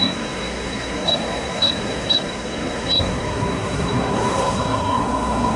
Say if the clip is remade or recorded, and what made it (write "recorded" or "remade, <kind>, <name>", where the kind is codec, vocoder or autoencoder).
remade, codec, SNAC